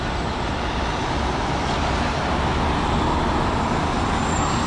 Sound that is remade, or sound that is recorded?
recorded